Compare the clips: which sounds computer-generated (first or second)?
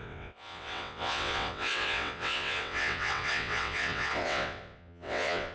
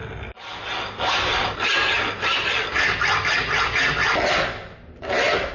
first